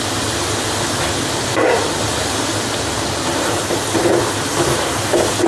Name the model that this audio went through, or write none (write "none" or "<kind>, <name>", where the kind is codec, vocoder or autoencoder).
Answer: none